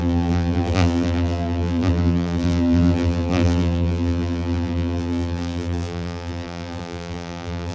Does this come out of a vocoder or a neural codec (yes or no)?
yes